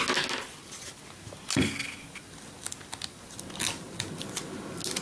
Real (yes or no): yes